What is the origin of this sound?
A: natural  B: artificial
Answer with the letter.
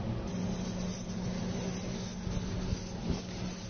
A